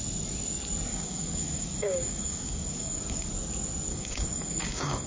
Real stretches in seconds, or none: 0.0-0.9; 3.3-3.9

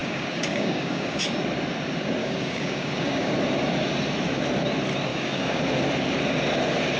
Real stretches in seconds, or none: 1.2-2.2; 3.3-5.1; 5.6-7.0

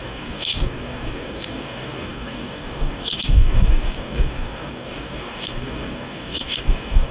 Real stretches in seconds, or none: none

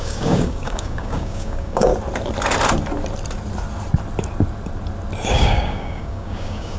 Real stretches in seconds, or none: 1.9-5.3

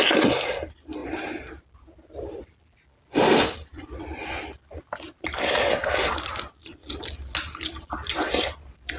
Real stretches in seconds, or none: 0.0-9.0

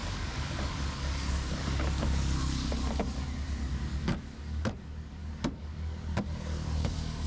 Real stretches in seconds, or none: none

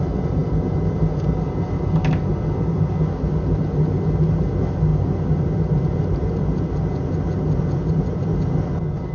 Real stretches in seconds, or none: 0.0-9.1